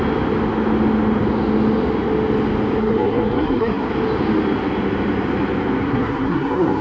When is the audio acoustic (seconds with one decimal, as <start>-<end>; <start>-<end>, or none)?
0.0-2.8; 3.9-5.8